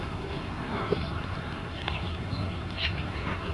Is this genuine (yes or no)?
no